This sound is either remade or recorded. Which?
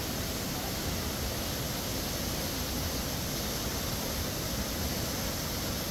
recorded